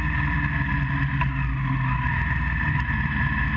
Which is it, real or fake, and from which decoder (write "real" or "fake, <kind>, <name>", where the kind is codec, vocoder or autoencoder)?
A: real